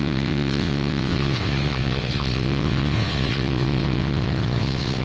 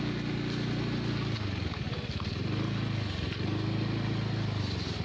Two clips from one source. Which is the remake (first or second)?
first